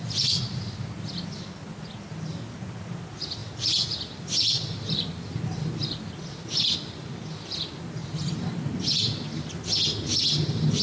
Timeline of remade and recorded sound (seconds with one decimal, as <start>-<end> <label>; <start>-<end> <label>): 0.0-10.8 recorded